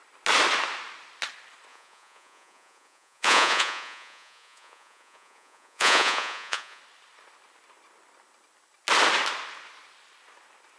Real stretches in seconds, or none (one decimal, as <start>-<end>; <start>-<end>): 0.0-1.7; 6.8-10.8